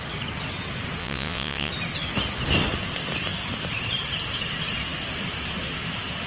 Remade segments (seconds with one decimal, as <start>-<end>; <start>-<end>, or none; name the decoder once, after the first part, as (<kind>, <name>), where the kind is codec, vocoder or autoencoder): 1.0-1.7 (vocoder, WaveNeXt)